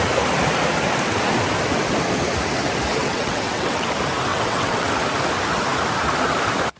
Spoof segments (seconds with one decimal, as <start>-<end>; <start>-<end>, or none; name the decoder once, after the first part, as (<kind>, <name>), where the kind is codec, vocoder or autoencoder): 3.0-3.9 (vocoder, WaveNeXt); 4.3-4.9